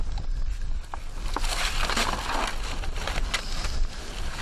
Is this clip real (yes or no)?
yes